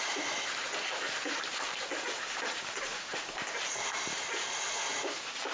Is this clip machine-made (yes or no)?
no